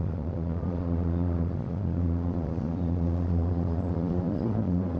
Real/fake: fake